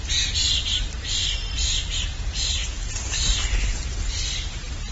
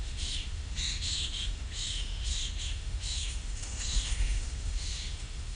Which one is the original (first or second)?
first